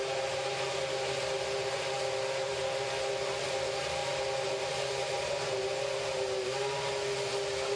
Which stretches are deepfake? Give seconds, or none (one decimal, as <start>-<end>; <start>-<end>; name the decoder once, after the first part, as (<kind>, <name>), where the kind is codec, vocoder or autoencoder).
none